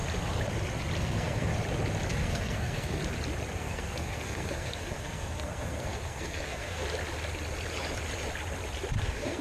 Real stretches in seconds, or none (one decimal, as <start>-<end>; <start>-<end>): 0.0-1.0; 1.5-2.1; 3.0-3.5; 6.8-9.0